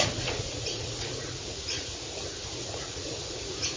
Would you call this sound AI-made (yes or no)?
yes